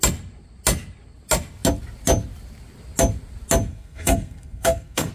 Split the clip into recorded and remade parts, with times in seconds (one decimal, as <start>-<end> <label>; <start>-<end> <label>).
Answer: 0.0-3.7 recorded; 3.7-5.1 remade